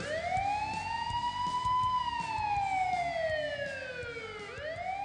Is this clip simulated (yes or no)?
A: no